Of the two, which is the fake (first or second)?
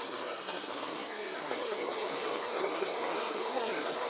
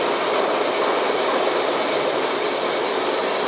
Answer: first